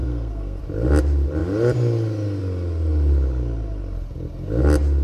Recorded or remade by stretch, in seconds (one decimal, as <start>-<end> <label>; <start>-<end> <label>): 0.0-0.6 remade; 0.6-5.0 recorded